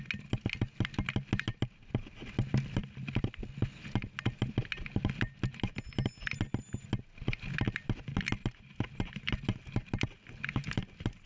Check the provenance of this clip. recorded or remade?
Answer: recorded